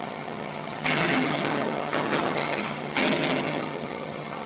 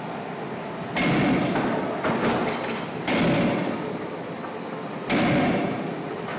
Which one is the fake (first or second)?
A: first